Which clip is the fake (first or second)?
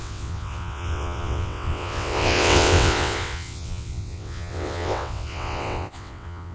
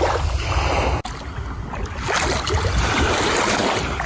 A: first